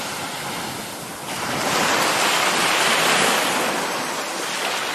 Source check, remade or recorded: recorded